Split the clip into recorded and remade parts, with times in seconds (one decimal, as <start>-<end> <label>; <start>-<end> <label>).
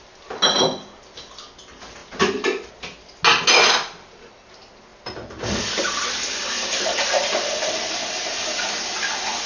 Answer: 0.0-8.0 recorded; 8.0-8.7 remade; 8.7-9.5 recorded